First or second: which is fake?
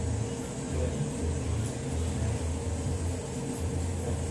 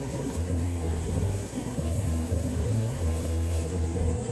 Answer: second